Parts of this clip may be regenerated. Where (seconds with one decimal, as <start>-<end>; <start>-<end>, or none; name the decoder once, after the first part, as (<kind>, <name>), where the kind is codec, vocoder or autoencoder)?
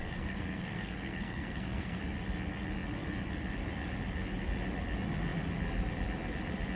0.0-2.0 (codec, SNAC)